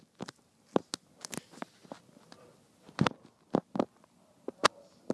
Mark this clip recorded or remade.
recorded